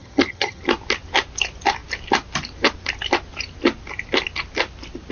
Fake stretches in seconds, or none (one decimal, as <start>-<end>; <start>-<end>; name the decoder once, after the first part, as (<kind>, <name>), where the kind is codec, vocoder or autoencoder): 0.0-0.6 (vocoder, HiFi-GAN)